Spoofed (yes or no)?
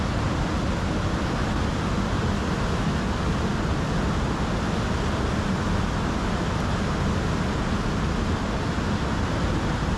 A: no